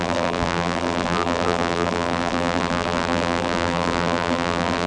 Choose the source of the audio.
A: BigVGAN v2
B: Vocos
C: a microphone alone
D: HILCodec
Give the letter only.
A